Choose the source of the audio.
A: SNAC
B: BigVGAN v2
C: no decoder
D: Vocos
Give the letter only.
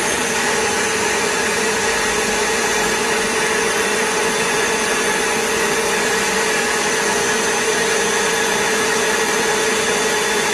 D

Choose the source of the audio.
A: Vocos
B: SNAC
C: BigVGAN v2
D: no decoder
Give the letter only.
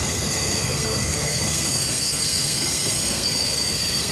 B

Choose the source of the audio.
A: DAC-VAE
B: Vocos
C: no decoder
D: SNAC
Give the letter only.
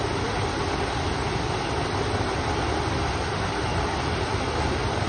C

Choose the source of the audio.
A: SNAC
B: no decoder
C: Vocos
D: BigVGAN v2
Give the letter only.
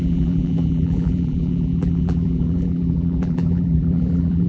D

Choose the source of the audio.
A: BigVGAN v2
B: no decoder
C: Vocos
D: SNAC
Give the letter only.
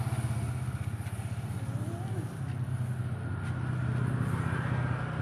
B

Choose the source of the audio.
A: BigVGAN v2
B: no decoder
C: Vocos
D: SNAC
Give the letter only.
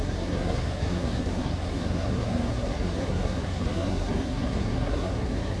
D